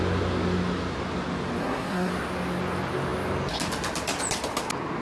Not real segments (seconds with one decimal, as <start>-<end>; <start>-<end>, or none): 1.6-2.1